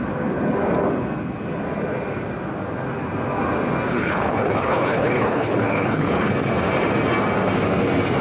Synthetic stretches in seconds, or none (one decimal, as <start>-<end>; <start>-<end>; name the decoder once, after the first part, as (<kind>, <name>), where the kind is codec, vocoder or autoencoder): 3.9-6.3 (codec, HILCodec)

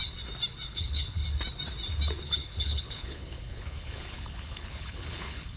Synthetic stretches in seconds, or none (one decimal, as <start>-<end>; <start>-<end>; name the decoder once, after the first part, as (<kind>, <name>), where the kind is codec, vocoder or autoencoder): 0.7-1.2 (codec, HILCodec); 2.2-5.6

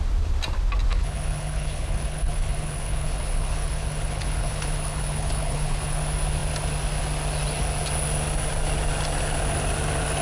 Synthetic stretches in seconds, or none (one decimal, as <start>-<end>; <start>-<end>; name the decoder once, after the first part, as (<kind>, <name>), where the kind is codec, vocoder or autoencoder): 0.9-6.0 (codec, HILCodec)